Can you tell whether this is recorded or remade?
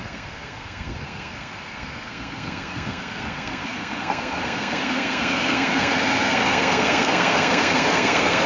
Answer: remade